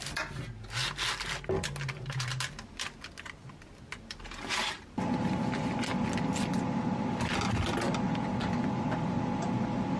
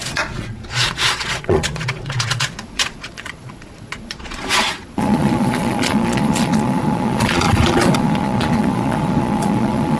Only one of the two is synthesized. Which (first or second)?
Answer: second